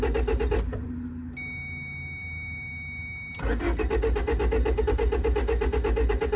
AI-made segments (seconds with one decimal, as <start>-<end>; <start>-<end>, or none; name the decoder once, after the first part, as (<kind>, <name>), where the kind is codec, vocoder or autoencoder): none